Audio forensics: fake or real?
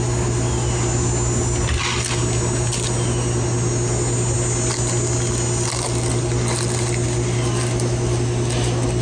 real